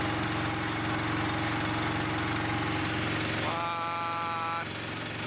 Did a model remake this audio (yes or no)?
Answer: no